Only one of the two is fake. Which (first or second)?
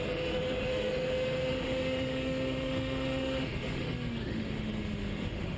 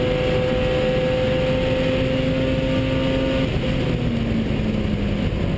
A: first